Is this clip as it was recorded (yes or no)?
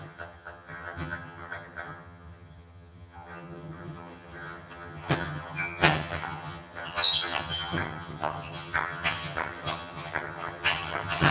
no